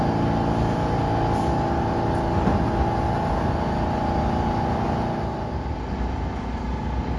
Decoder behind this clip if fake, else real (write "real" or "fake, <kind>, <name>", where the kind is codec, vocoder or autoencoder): real